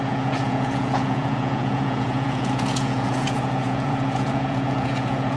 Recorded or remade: remade